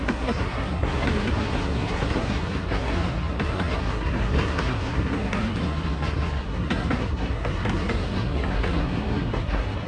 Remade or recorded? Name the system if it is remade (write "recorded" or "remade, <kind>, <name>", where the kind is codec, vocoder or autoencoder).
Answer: remade, codec, SNAC